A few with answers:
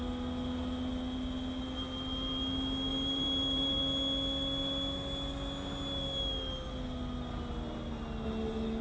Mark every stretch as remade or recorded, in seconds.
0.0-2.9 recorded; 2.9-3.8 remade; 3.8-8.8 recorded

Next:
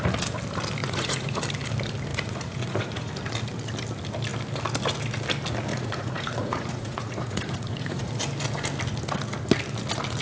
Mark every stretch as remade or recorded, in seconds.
0.0-0.8 recorded; 0.8-1.4 remade; 1.4-2.1 recorded; 2.1-3.1 remade; 3.1-5.7 recorded; 5.7-8.1 remade; 8.1-10.2 recorded